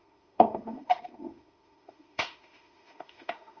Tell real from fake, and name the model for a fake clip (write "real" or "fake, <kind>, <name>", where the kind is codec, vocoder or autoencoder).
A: fake, autoencoder, DAC-VAE